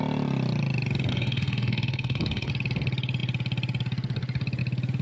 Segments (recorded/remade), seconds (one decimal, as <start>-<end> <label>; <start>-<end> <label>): 0.0-1.1 recorded; 1.1-2.5 remade; 2.5-5.0 recorded